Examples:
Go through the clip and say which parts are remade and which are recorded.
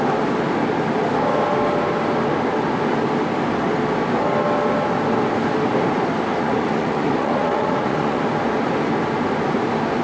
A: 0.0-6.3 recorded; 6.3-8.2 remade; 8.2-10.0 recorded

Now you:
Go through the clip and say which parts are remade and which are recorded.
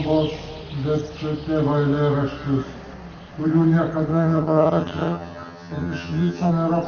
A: 0.0-4.1 recorded; 4.1-6.5 remade; 6.5-6.9 recorded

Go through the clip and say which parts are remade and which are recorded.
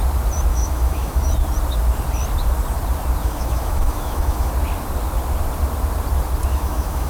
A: 0.0-0.5 recorded; 0.5-1.2 remade; 1.2-3.2 recorded; 3.2-4.5 remade; 4.5-6.5 recorded; 6.5-7.1 remade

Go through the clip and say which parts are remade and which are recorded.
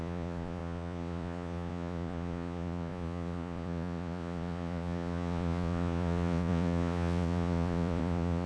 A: 0.0-8.5 remade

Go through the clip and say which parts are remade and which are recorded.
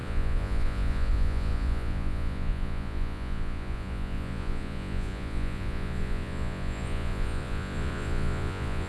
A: 0.0-8.9 remade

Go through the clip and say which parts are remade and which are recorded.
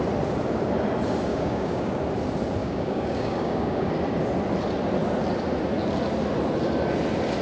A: 0.0-1.3 recorded; 1.3-2.0 remade; 2.0-2.6 recorded; 2.6-3.9 remade; 3.9-7.4 recorded